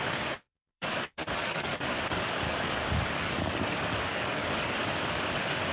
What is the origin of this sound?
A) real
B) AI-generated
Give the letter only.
B